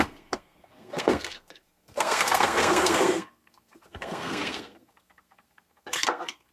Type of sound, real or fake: fake